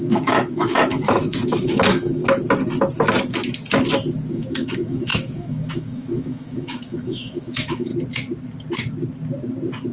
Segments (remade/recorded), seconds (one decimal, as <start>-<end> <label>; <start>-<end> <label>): 0.0-2.2 remade; 2.2-4.3 recorded; 4.3-7.9 remade; 7.9-9.9 recorded

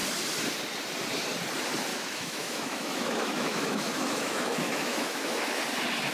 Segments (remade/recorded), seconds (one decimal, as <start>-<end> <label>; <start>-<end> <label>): 0.0-1.9 recorded; 1.9-5.6 remade; 5.6-6.1 recorded

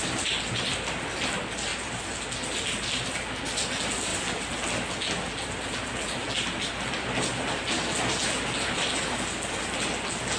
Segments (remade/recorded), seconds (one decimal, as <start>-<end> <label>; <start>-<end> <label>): 0.0-10.4 recorded

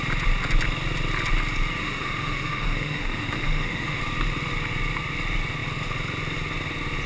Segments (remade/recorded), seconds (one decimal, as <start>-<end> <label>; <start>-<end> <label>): 0.0-1.8 recorded; 1.8-4.0 remade; 4.0-7.1 recorded

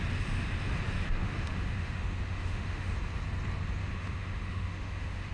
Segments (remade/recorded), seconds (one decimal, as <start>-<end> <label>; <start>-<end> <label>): 0.0-1.2 recorded; 1.2-2.9 remade; 2.9-3.8 recorded; 3.8-5.3 remade

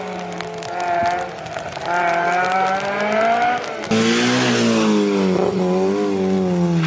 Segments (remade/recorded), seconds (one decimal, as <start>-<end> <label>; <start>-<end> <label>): 0.0-6.9 recorded

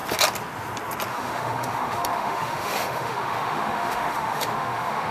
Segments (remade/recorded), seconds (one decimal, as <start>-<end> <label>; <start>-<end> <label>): 0.0-1.1 recorded; 1.1-5.1 remade